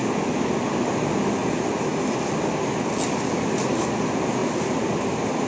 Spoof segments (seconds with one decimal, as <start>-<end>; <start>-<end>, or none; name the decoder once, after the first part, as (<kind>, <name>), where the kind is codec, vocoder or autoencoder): none